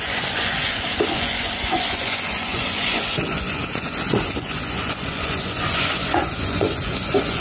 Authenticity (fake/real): fake